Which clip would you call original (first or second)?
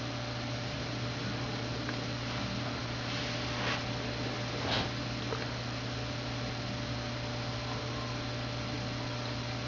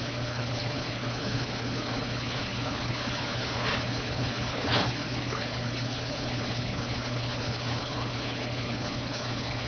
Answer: first